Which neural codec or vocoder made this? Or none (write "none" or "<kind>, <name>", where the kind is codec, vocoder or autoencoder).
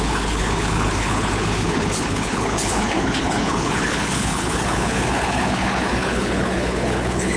codec, HILCodec